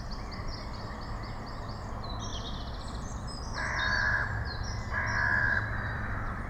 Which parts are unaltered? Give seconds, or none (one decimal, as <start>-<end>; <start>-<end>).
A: 0.0-2.3